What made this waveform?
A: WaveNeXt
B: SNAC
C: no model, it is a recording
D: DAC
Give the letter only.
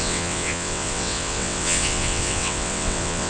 A